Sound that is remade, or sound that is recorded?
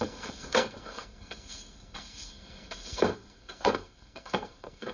remade